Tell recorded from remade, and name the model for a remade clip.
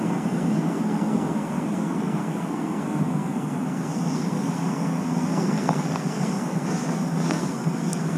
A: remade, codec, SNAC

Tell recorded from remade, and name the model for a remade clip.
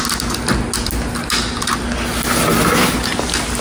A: recorded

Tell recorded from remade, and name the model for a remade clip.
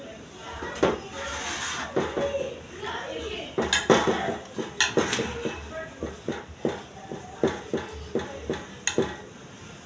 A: recorded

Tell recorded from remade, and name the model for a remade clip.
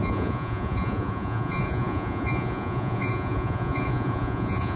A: remade, vocoder, Vocos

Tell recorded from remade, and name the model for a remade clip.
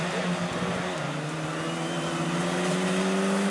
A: recorded